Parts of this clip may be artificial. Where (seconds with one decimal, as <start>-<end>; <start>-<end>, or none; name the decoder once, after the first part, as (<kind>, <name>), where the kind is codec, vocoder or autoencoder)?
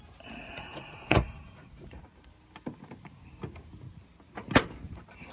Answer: 0.4-2.0 (vocoder, Vocos)